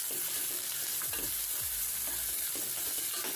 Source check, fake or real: fake